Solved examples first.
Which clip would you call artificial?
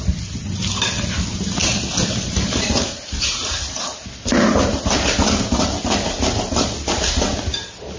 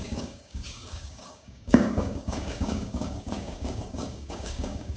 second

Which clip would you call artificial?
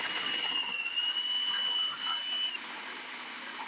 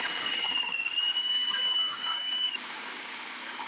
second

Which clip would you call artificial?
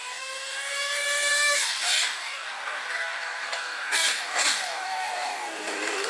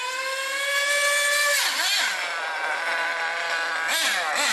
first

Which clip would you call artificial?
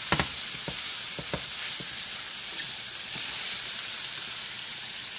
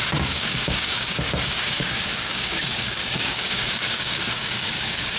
second